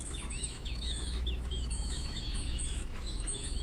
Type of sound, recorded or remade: remade